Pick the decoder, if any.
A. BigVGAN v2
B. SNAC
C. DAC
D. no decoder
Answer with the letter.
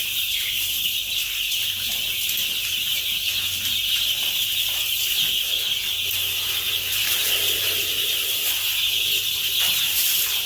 D